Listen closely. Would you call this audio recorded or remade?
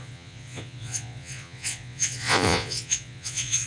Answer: remade